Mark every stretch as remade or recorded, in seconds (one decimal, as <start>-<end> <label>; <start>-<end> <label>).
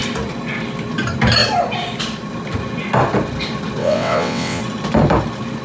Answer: 0.0-3.8 recorded; 3.8-4.6 remade; 4.6-5.6 recorded